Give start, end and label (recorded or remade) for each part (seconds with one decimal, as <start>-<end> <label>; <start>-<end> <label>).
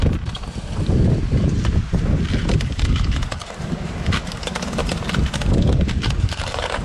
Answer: 0.0-2.5 recorded; 2.5-4.8 remade; 4.8-5.5 recorded; 5.5-6.8 remade